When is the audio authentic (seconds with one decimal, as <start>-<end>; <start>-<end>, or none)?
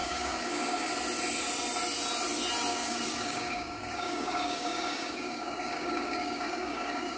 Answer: 0.9-2.7